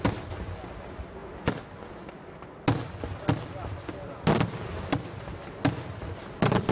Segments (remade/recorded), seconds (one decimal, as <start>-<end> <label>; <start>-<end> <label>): 0.0-6.7 recorded